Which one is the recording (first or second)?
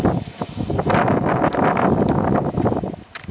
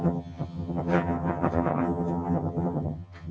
first